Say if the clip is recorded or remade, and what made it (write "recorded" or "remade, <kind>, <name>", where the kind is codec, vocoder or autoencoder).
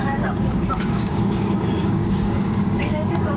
remade, codec, DAC